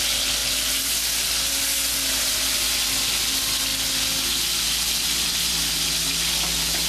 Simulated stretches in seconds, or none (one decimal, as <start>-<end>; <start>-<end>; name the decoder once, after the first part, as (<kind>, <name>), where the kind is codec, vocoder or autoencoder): none